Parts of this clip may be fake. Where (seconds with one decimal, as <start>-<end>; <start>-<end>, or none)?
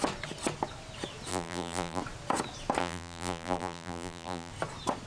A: 1.3-2.0; 2.8-4.5